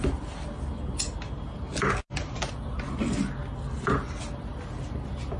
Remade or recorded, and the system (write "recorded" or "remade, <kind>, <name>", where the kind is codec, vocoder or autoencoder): recorded